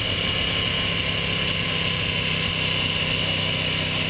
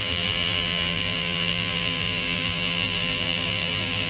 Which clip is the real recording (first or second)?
first